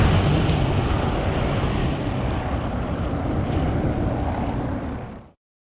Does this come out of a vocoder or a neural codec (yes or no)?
no